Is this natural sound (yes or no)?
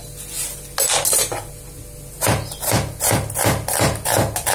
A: yes